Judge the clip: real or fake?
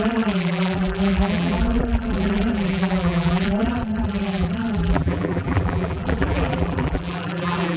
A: fake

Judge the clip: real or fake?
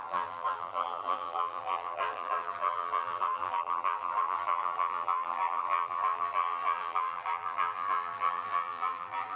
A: fake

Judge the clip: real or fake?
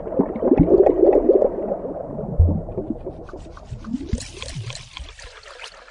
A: real